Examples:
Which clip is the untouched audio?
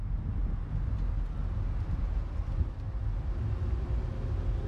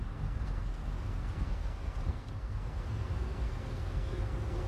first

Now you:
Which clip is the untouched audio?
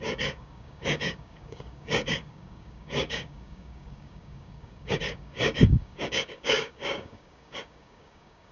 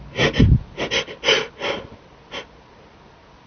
second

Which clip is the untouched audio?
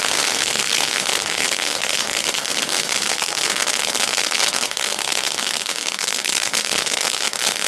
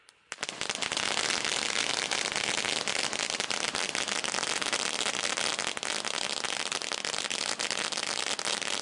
second